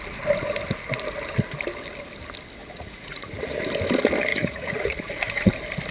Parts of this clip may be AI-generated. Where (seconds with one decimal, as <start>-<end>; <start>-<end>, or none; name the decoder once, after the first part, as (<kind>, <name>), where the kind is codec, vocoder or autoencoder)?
2.6-3.6 (vocoder, Vocos); 4.3-5.5